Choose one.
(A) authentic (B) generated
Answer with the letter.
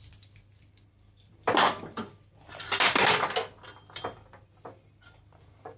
B